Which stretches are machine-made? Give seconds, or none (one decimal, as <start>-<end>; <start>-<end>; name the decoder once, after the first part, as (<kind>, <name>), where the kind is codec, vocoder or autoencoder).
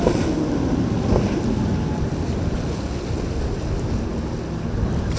none